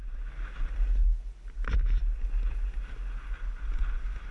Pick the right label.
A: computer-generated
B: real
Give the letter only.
B